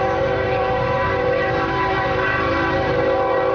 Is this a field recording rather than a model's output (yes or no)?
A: no